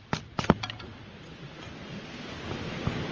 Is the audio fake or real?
fake